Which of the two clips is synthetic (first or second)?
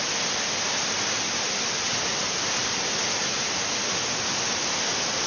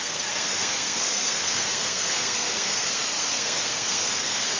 second